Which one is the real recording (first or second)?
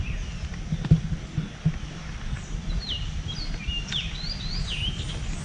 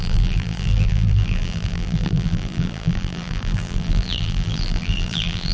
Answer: first